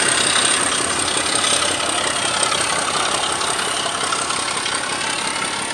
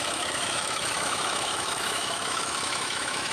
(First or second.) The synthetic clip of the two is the second